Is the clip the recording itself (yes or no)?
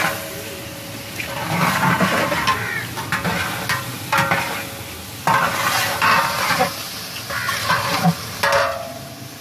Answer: yes